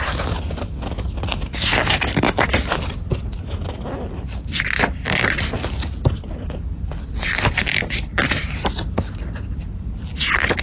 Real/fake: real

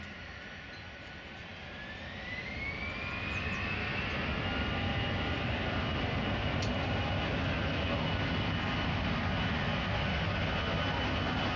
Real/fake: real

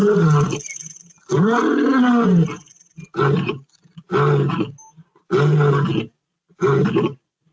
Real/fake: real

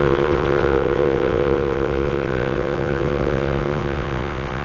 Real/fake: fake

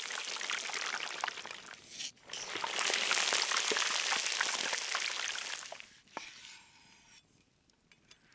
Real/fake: real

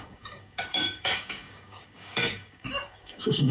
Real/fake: fake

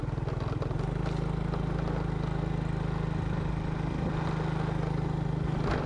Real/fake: real